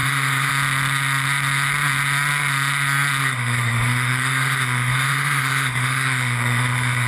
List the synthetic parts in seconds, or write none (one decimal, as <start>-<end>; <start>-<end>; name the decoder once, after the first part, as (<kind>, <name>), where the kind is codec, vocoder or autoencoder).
0.0-0.5 (autoencoder, DAC-VAE); 3.2-7.1